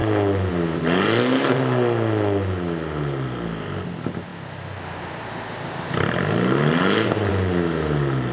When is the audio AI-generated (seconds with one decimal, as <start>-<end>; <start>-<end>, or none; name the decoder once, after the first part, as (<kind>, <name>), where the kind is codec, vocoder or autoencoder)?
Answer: none